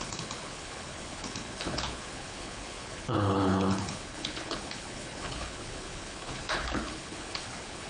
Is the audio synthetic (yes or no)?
yes